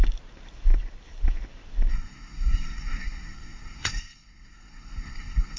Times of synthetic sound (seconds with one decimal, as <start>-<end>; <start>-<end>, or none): 1.9-5.6

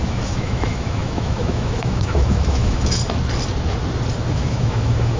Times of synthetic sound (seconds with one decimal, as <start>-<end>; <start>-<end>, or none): 0.0-3.0; 4.3-5.2

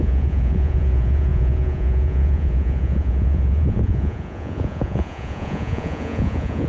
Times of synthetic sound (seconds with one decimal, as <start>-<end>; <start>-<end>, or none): 0.0-6.7

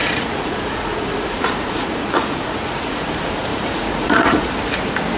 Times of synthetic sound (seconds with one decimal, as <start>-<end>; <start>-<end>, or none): 0.0-3.1; 3.5-4.5

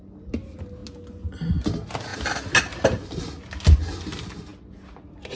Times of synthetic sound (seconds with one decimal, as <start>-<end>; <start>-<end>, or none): none